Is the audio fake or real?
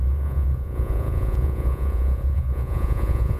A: fake